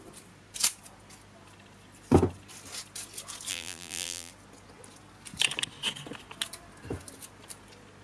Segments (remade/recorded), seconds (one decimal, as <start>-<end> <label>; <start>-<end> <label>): 0.0-3.5 recorded; 3.5-4.3 remade; 4.3-8.0 recorded